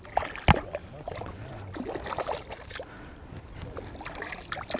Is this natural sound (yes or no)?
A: yes